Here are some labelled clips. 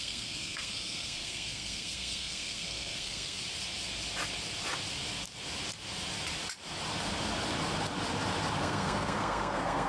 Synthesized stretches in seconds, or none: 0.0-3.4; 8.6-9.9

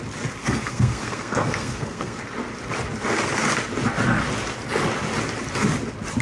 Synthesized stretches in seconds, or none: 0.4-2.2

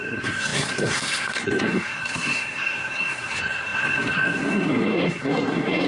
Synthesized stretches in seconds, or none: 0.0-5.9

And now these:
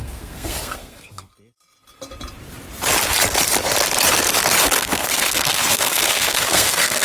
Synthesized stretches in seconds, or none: 0.0-1.3; 4.8-7.0

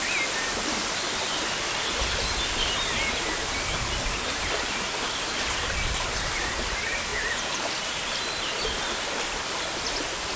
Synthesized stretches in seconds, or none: none